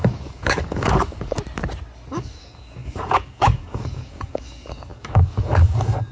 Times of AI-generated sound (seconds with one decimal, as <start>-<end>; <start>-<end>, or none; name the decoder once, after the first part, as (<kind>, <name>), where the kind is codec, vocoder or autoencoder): 0.0-1.4 (codec, DAC); 2.1-6.1